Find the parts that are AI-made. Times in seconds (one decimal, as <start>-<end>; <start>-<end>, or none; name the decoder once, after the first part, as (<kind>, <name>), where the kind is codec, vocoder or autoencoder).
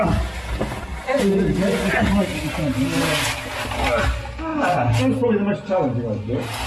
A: none